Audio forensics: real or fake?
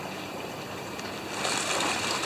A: fake